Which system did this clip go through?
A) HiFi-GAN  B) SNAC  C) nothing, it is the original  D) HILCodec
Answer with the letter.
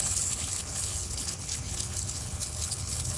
D